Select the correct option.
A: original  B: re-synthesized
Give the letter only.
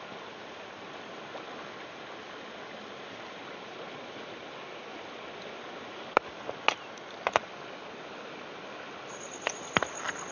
A